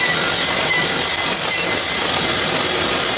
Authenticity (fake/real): real